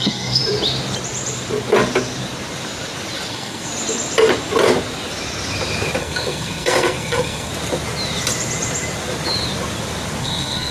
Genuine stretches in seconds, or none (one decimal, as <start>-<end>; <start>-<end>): 0.4-3.3; 3.7-6.0; 7.5-10.2